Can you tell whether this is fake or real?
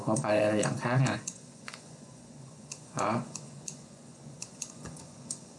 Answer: fake